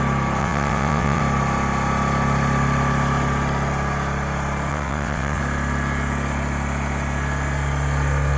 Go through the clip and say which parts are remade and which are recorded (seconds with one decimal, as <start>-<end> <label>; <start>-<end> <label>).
0.0-0.4 recorded; 0.4-1.2 remade; 1.2-4.7 recorded; 4.7-5.4 remade; 5.4-8.4 recorded